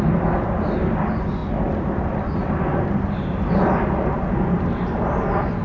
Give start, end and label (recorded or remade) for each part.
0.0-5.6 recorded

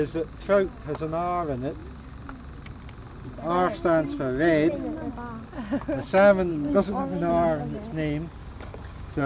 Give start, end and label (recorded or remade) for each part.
0.0-6.5 recorded; 6.5-7.3 remade; 7.3-8.4 recorded; 8.4-9.3 remade

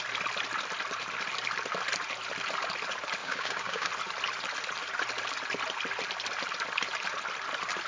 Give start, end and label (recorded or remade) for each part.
0.0-3.2 recorded; 3.2-3.9 remade; 3.9-7.9 recorded

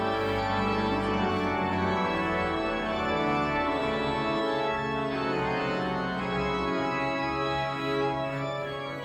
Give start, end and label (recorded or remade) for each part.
0.0-0.7 remade; 0.7-1.3 recorded; 1.3-3.8 remade; 3.8-4.4 recorded; 4.4-5.6 remade; 5.6-6.2 recorded; 6.2-9.0 remade

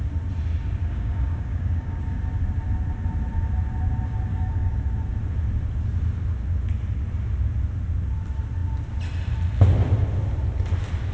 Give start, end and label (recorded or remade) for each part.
0.0-0.8 recorded; 0.8-2.2 remade; 2.2-4.3 recorded; 4.3-4.8 remade; 4.8-11.1 recorded

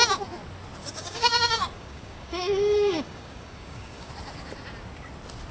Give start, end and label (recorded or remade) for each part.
0.0-0.8 recorded; 0.8-4.1 remade; 4.1-5.5 recorded

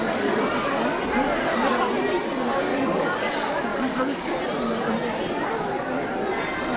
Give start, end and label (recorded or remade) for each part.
0.0-2.7 recorded; 2.7-3.3 remade; 3.3-3.7 recorded; 3.7-4.3 remade; 4.3-6.8 recorded